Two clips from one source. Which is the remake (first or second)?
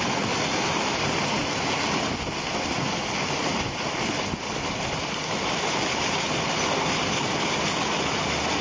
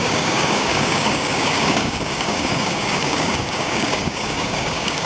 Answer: second